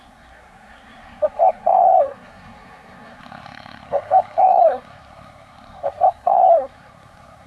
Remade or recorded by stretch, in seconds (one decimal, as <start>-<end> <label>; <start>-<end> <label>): 0.0-7.5 remade